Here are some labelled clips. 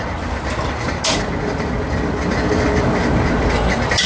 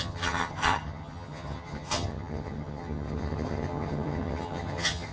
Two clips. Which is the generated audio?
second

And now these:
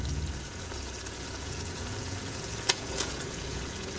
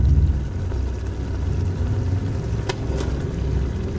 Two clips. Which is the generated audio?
first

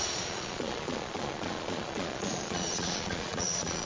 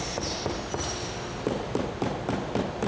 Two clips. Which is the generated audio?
first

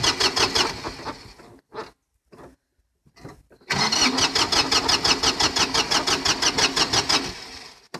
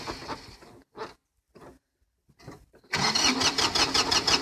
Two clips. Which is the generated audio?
second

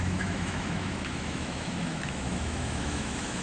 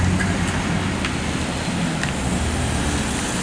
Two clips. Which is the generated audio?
first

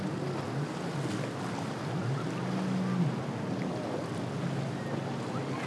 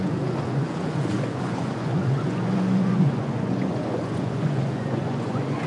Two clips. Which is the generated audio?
second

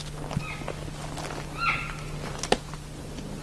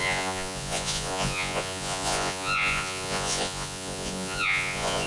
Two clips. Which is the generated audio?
second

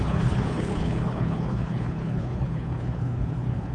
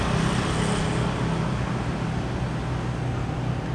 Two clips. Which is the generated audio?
first